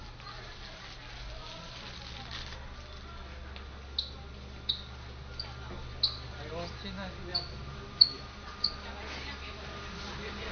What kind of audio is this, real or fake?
real